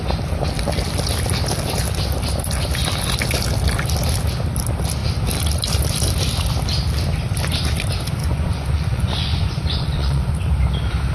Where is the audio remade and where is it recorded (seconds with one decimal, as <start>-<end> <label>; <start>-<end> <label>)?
0.0-8.2 recorded; 8.2-10.3 remade; 10.3-11.1 recorded